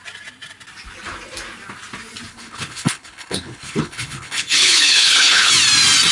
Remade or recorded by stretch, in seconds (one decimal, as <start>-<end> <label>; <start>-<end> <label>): 0.0-2.3 recorded; 2.3-5.5 remade; 5.5-6.1 recorded